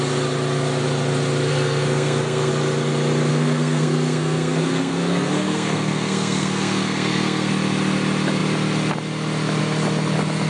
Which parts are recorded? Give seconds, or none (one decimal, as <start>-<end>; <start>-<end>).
0.0-1.5; 2.5-3.3; 7.5-10.5